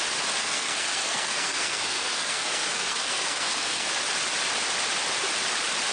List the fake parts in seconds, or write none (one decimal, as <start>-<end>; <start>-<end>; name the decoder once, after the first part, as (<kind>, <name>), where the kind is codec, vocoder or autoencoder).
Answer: 0.4-3.9 (codec, SNAC)